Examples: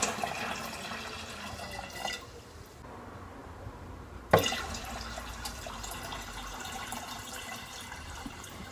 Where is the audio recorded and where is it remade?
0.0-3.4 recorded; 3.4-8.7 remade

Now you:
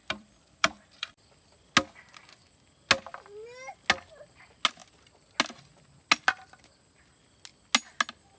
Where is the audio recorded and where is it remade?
0.0-1.6 remade; 1.6-8.4 recorded

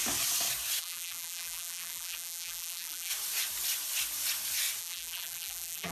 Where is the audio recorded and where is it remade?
0.0-0.8 recorded; 0.8-3.1 remade; 3.1-4.8 recorded; 4.8-5.9 remade

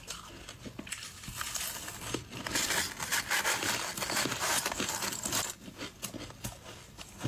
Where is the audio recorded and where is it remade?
0.0-1.3 recorded; 1.3-2.3 remade; 2.3-3.1 recorded; 3.1-6.0 remade; 6.0-7.3 recorded

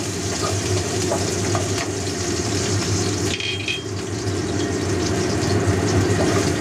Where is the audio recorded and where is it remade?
0.0-1.1 remade; 1.1-5.1 recorded; 5.1-6.6 remade

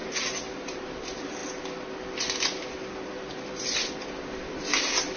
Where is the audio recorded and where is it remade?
0.0-5.2 recorded

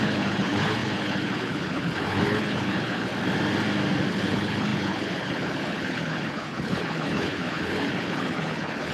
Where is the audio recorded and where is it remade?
0.0-3.1 remade; 3.1-4.1 recorded; 4.1-8.9 remade

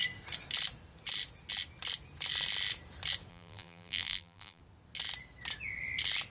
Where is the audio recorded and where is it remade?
0.0-3.3 recorded; 3.3-4.6 remade; 4.6-6.3 recorded